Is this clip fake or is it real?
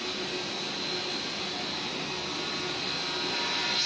real